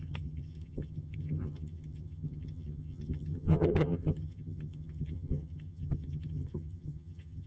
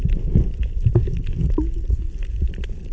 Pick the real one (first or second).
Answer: second